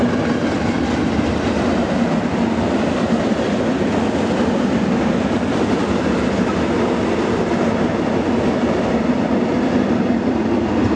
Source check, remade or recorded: recorded